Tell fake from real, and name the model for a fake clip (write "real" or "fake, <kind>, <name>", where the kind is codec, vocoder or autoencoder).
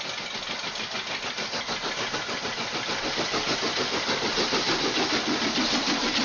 real